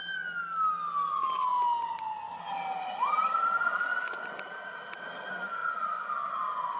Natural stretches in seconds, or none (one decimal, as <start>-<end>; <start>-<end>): 0.0-6.8